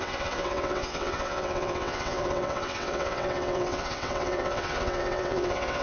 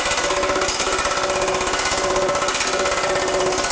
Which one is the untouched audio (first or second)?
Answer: second